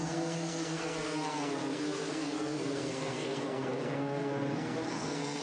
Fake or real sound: fake